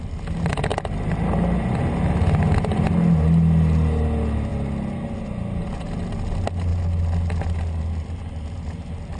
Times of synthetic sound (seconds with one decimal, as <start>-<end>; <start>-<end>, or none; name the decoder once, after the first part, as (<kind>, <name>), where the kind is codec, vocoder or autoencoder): none